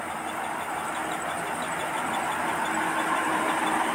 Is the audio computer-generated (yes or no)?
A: no